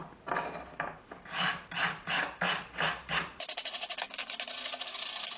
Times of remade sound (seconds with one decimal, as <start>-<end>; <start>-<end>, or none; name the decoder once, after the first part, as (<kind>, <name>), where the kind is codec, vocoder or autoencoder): none